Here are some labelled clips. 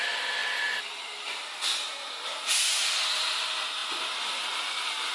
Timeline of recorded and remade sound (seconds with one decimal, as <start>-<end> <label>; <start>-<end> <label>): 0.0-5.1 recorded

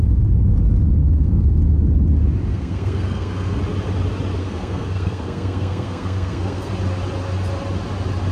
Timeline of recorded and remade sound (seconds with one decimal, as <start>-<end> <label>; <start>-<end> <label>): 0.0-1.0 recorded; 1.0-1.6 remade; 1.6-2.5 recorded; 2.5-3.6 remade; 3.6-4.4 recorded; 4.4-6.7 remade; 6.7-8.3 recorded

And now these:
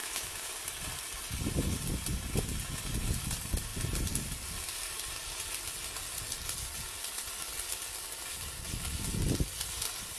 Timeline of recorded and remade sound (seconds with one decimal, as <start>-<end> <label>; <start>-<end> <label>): 0.0-0.5 remade; 0.5-10.2 recorded

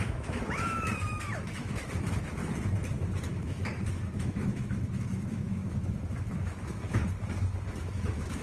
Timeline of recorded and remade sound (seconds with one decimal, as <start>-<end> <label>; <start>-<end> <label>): 0.0-2.4 remade; 2.4-3.3 recorded; 3.3-7.0 remade; 7.0-7.7 recorded; 7.7-8.4 remade

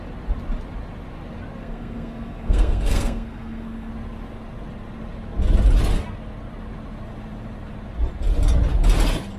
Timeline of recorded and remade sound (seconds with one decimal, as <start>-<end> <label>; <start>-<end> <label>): 0.0-1.6 recorded; 1.6-3.9 remade; 3.9-9.4 recorded

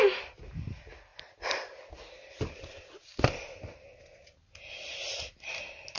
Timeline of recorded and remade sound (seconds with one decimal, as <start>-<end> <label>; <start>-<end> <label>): 0.0-6.0 recorded